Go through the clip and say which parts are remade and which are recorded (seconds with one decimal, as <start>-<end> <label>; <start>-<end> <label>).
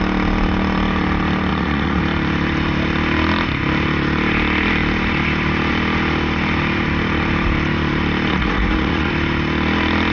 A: 0.0-1.5 recorded; 1.5-2.0 remade; 2.0-8.3 recorded; 8.3-9.1 remade; 9.1-10.1 recorded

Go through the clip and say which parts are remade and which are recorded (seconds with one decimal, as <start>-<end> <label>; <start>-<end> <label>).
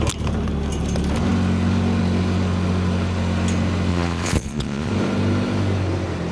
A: 0.0-3.9 recorded; 3.9-4.9 remade; 4.9-6.3 recorded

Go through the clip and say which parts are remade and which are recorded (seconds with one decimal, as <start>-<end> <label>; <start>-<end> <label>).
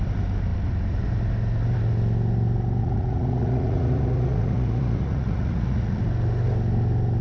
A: 0.0-2.8 recorded; 2.8-6.0 remade; 6.0-7.2 recorded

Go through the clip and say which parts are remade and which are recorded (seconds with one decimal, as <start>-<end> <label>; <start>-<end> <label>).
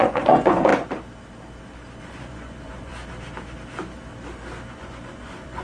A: 0.0-0.7 remade; 0.7-2.0 recorded; 2.0-2.9 remade; 2.9-4.8 recorded; 4.8-5.6 remade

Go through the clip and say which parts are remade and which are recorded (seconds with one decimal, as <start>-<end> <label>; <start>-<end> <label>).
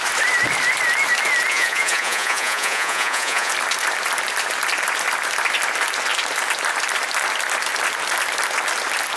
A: 0.0-1.5 recorded; 1.5-3.5 remade; 3.5-9.2 recorded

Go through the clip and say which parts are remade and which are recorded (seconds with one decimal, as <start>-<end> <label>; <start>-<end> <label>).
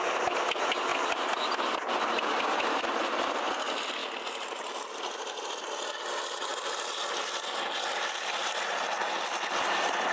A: 0.0-10.1 recorded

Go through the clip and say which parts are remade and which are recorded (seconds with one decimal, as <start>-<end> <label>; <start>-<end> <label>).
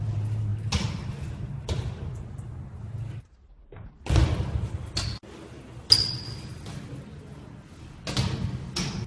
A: 0.0-9.1 recorded